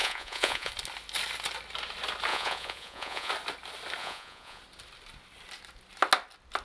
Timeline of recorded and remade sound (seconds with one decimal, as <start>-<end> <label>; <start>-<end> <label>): 0.0-0.7 remade; 0.7-2.3 recorded; 2.3-3.3 remade; 3.3-4.0 recorded; 4.0-4.6 remade; 4.6-6.6 recorded